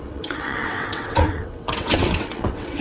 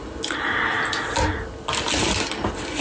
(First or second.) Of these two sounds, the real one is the second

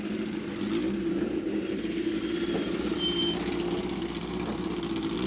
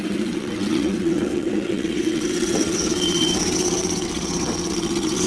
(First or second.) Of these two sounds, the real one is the first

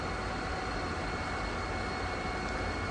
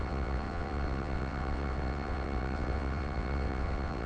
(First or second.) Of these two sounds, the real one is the first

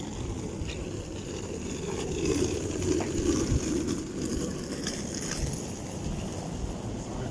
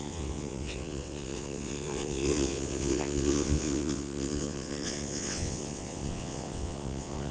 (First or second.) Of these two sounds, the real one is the first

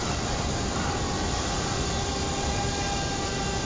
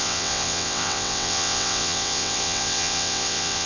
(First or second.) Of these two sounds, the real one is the first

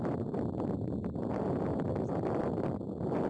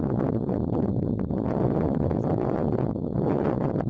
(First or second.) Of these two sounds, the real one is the first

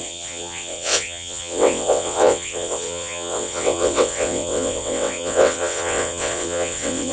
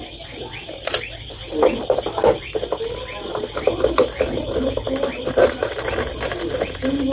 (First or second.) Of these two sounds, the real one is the second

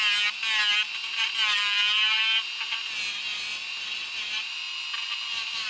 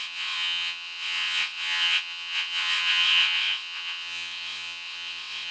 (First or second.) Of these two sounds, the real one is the first